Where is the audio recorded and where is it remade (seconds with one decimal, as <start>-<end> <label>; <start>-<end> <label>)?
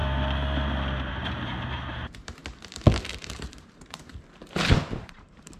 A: 0.0-1.1 recorded; 1.1-2.4 remade; 2.4-3.0 recorded; 3.0-4.1 remade; 4.1-5.0 recorded; 5.0-5.6 remade